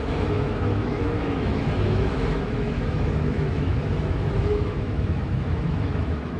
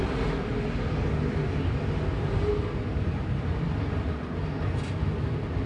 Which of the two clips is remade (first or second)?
first